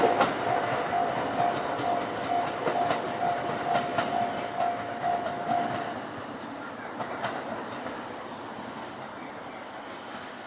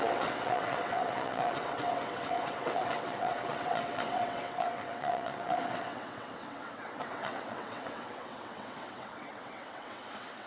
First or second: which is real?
first